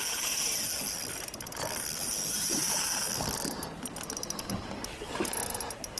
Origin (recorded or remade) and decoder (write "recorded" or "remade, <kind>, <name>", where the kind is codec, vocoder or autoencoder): recorded